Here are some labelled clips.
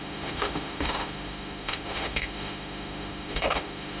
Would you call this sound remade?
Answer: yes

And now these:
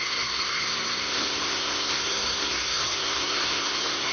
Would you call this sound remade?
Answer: yes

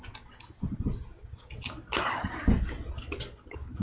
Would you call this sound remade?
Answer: no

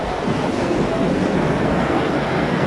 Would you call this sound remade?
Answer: yes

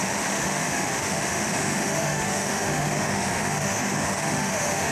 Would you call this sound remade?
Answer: yes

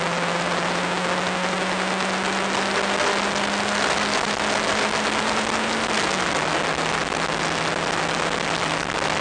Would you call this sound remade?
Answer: no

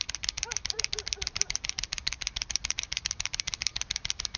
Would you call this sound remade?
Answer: yes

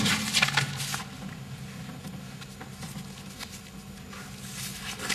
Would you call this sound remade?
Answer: no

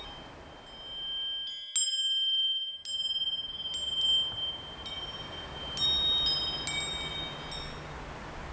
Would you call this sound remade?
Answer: no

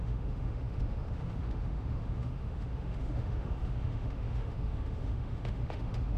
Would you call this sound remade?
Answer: yes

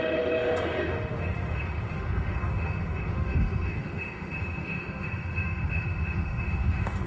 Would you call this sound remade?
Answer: yes